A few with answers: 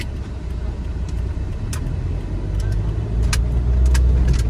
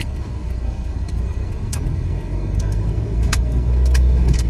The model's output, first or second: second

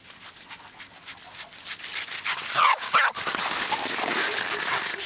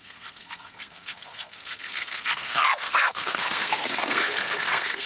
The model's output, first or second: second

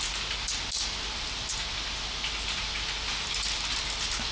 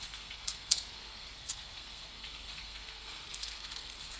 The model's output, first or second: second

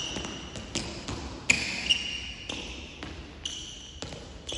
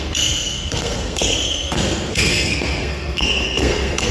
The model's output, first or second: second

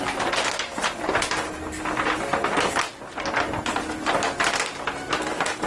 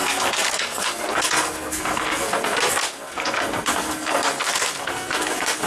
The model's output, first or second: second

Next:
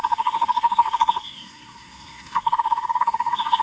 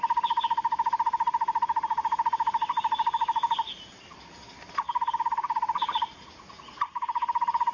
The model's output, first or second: first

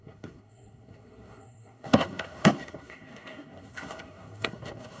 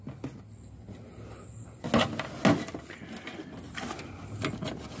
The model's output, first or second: first